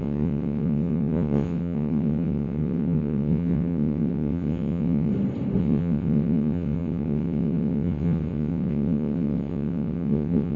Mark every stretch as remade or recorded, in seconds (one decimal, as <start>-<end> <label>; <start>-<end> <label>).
0.0-5.1 remade; 5.1-5.6 recorded; 5.6-10.6 remade